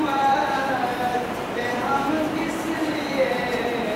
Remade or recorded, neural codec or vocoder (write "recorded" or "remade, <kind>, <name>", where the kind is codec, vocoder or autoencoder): remade, vocoder, BigVGAN v2